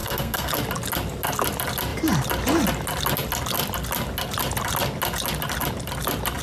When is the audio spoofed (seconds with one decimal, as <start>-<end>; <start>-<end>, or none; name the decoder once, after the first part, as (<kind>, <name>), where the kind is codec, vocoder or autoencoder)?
0.0-0.5 (codec, SNAC)